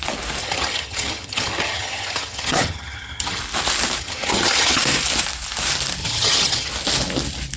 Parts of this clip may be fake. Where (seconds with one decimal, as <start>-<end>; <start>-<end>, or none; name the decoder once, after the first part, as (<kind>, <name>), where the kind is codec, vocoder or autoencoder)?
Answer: 0.4-3.4 (vocoder, HiFi-GAN); 4.0-4.8; 6.0-6.7